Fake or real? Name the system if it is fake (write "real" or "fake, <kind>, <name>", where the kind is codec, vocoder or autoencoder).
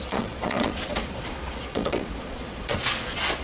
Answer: fake, vocoder, Vocos